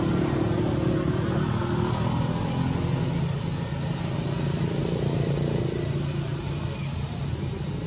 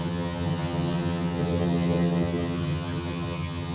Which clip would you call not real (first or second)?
second